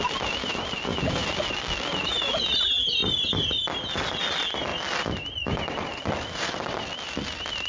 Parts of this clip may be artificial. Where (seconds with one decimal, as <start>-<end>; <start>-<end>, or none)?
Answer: none